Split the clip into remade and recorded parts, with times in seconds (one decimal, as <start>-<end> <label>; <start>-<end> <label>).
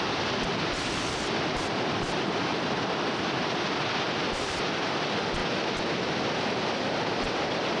0.0-7.8 recorded